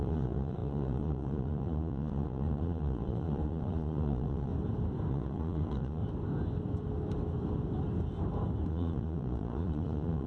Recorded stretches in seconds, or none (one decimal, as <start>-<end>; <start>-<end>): 4.5-5.1; 6.0-8.7